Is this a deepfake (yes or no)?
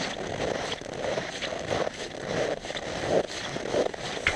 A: no